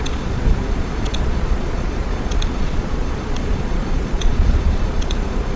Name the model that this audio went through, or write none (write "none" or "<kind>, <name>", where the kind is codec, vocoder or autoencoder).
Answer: vocoder, Vocos